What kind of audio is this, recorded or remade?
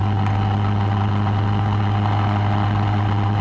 recorded